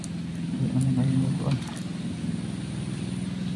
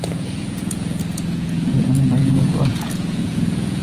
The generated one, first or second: second